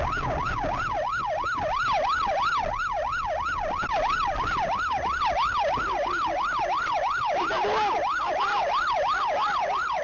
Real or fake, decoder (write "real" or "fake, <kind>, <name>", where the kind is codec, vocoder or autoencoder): real